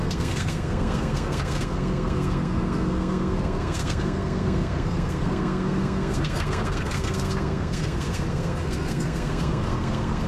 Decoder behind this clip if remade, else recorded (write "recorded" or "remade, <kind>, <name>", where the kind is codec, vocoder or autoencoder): remade, codec, SNAC